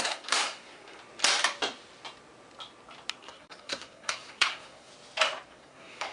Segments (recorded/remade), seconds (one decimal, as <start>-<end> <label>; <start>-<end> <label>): 0.0-1.0 remade; 1.0-3.2 recorded; 3.2-4.9 remade; 4.9-5.5 recorded; 5.5-6.1 remade